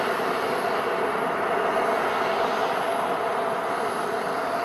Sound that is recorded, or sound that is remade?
recorded